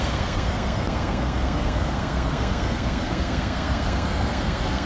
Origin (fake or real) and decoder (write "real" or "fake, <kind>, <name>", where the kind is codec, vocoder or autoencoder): fake, codec, SNAC